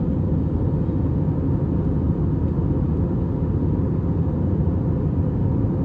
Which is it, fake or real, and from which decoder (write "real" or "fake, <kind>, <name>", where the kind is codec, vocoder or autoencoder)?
real